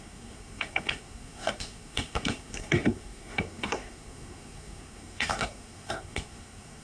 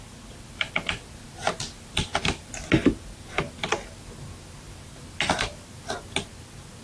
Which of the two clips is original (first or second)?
second